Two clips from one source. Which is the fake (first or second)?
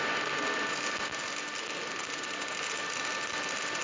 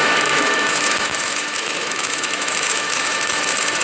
second